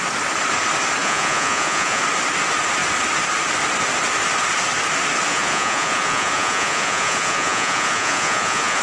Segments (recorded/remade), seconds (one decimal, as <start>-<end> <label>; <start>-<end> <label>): 0.0-1.0 recorded; 1.0-2.0 remade; 2.0-5.3 recorded; 5.3-8.8 remade